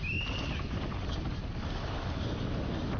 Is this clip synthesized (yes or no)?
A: no